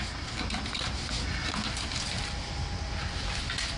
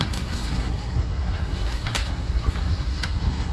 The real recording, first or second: first